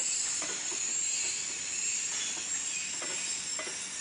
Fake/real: real